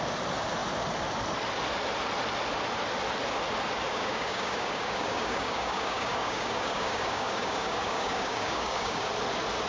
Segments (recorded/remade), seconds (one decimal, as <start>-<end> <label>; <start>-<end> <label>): 0.0-3.9 recorded; 3.9-9.1 remade; 9.1-9.7 recorded